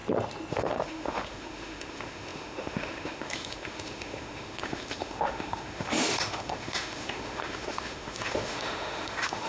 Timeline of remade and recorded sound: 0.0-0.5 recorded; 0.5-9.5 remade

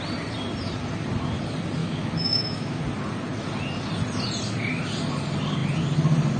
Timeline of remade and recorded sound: 0.0-1.8 recorded; 1.8-2.8 remade; 2.8-6.4 recorded

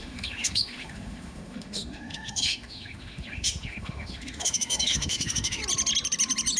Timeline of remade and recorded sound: 0.0-5.6 remade; 5.6-6.6 recorded

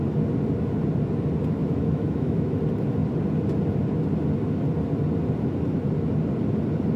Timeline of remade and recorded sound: 0.0-1.6 recorded; 1.6-2.5 remade; 2.5-7.0 recorded